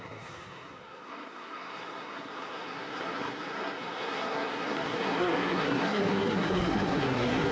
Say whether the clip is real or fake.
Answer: fake